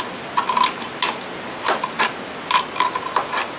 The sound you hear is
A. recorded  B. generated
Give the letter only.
A